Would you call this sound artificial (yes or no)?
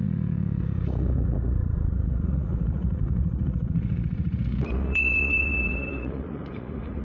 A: yes